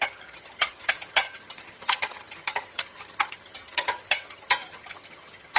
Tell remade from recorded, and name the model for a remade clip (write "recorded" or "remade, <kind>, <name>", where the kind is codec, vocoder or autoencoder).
remade, vocoder, HiFi-GAN